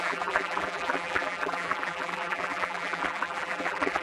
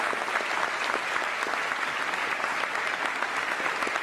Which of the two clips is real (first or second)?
second